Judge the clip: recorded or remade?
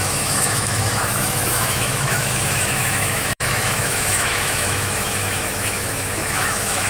remade